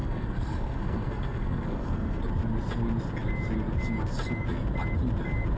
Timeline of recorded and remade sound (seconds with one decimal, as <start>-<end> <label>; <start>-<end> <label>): 0.0-2.2 remade; 2.2-5.6 recorded